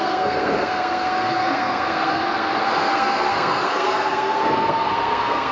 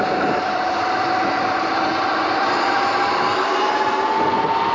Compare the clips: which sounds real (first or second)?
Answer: second